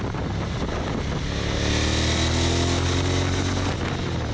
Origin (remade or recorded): recorded